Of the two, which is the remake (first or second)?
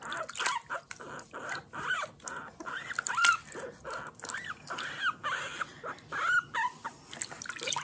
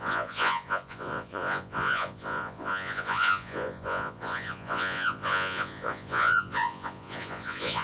second